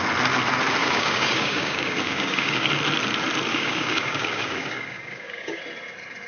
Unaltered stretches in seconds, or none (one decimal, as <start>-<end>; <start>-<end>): 0.0-0.8; 2.7-3.5; 5.6-6.3